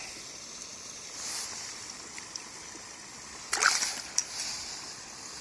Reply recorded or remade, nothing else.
recorded